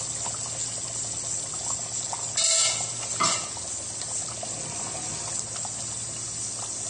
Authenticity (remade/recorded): recorded